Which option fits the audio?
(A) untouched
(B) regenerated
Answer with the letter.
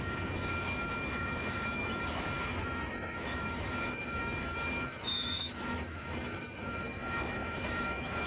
B